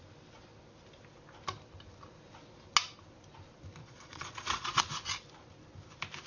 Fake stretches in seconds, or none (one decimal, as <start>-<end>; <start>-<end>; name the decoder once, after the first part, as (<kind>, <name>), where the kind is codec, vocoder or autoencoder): 3.8-4.8 (vocoder, Vocos)